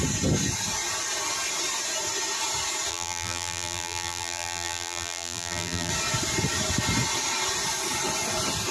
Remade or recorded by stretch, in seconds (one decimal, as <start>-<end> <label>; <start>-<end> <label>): 0.0-2.9 recorded; 2.9-5.9 remade; 5.9-8.7 recorded